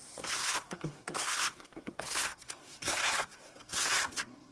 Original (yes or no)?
no